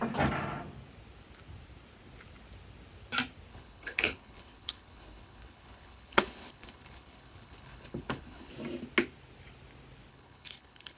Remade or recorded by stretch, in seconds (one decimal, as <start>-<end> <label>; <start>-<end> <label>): 0.0-3.5 recorded; 3.5-8.5 remade; 8.5-10.1 recorded; 10.1-11.0 remade